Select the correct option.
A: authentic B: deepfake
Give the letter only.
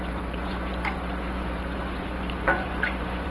B